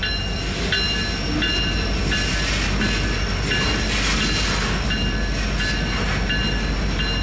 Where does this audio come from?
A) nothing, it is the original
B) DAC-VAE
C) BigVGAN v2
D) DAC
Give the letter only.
A